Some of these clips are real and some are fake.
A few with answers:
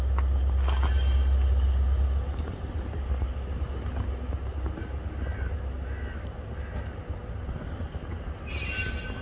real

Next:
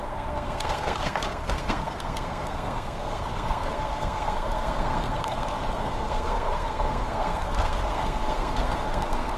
fake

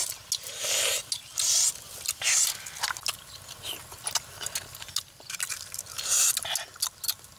real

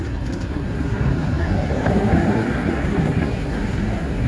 fake